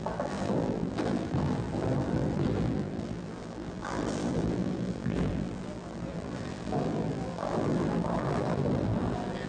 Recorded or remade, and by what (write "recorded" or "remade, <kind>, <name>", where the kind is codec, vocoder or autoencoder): remade, vocoder, BigVGAN v2